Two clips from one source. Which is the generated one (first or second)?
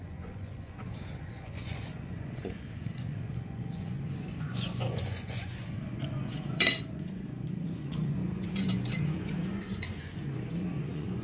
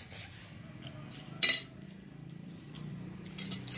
first